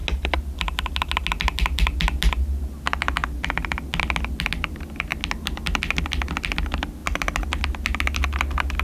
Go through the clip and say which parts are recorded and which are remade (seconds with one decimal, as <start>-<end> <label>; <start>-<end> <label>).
0.0-8.8 recorded